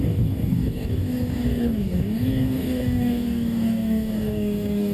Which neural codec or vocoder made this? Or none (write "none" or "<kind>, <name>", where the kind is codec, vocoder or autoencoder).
codec, DAC